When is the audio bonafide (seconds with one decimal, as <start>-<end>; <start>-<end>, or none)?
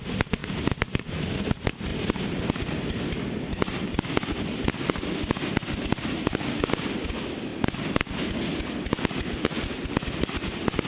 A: 0.0-0.4; 1.2-1.9; 2.4-10.9